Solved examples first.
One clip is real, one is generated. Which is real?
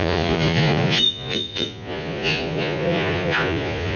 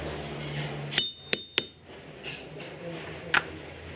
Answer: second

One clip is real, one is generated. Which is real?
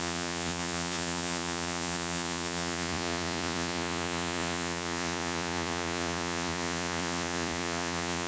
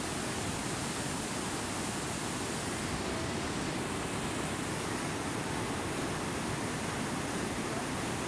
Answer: second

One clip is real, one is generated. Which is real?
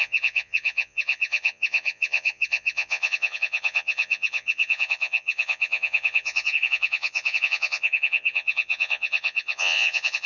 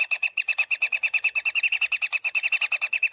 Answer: second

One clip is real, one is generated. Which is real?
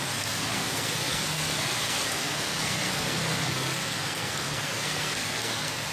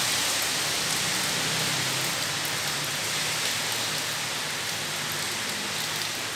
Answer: second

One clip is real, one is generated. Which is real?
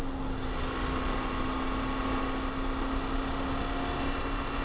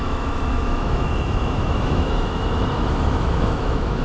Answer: first